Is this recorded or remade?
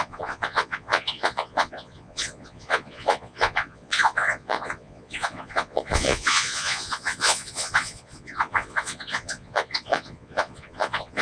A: remade